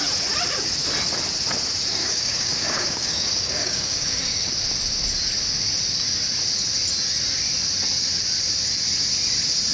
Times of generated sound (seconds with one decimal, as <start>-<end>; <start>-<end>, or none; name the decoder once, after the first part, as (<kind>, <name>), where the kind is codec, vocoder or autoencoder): 1.9-4.5 (codec, DAC)